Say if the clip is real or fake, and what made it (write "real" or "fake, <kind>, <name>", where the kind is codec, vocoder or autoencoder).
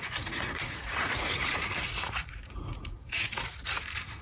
fake, vocoder, Vocos